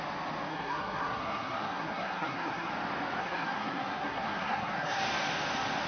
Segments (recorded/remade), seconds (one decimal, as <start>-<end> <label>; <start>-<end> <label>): 0.0-0.5 recorded; 0.5-2.7 remade; 2.7-3.2 recorded; 3.2-5.0 remade; 5.0-5.9 recorded